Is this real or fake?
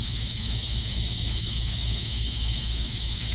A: fake